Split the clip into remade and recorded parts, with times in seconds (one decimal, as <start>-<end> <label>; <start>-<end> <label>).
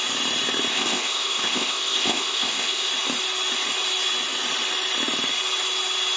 0.0-0.7 recorded; 0.7-2.9 remade; 2.9-6.2 recorded